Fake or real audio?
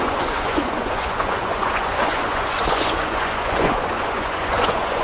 fake